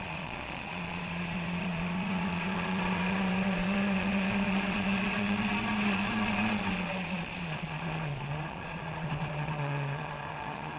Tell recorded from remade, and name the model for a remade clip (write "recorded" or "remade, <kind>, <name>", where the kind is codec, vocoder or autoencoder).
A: remade, vocoder, Vocos